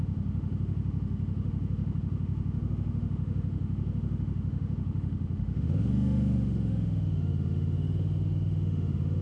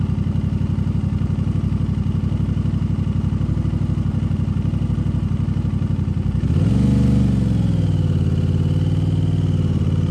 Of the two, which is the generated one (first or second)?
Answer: first